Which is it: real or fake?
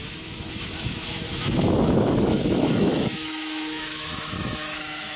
fake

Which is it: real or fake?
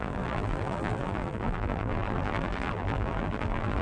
fake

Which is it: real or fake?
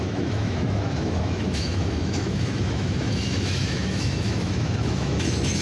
fake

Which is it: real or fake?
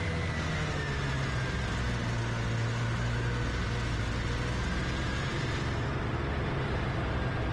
real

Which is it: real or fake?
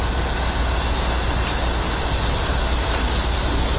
real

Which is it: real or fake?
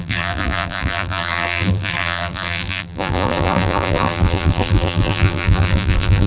fake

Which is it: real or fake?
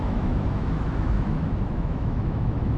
fake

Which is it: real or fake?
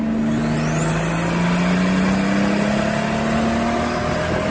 real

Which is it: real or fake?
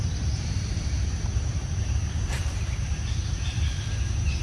fake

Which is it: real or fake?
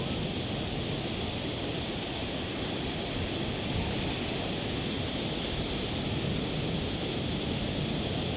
real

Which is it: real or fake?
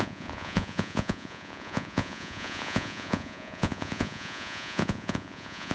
fake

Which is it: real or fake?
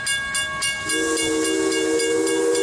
real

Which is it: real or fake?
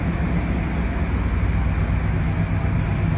real